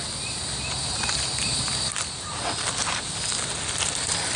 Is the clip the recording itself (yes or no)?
yes